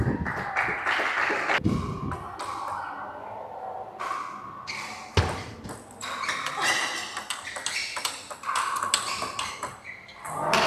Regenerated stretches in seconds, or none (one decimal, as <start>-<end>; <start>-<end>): none